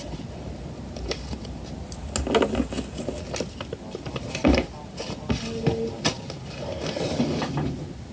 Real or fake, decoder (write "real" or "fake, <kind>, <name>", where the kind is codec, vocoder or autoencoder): real